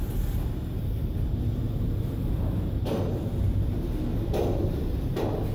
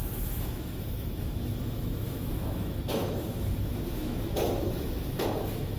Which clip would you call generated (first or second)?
second